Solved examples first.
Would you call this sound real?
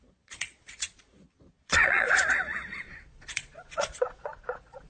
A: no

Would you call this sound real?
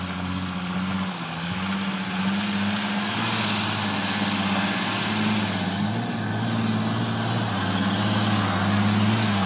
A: yes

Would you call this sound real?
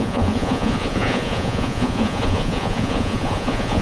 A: no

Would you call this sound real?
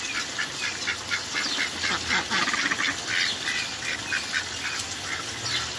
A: yes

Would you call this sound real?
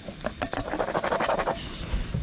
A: yes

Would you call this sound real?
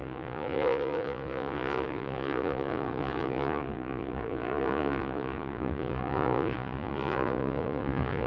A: no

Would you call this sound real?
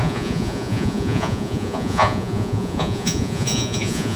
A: no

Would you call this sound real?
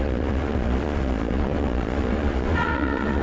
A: no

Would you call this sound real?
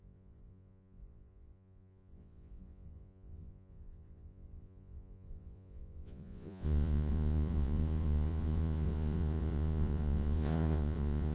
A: no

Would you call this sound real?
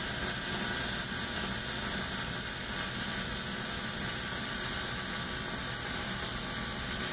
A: yes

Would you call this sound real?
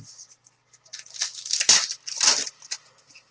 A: yes